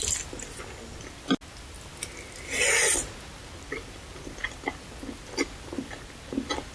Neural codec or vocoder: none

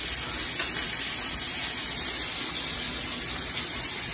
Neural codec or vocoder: none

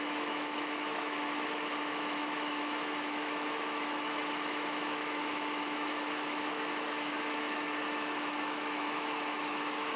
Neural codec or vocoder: autoencoder, DAC-VAE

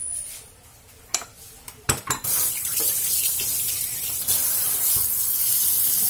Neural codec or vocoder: vocoder, BigVGAN v2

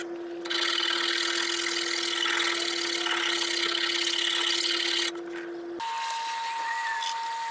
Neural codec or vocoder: none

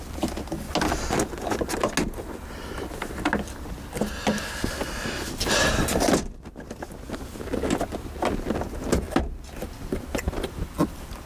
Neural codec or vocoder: none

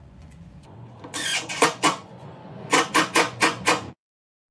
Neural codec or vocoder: vocoder, Vocos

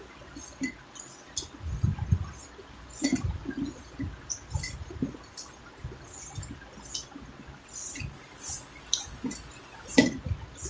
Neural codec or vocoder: none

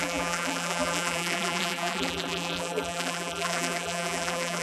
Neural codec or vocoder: vocoder, BigVGAN v2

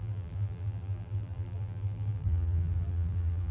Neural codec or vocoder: vocoder, BigVGAN v2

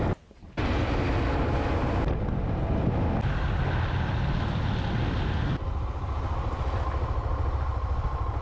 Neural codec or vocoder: none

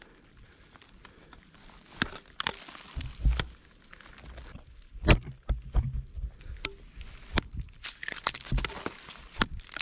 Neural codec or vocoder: none